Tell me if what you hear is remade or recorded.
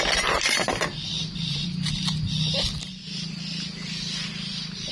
recorded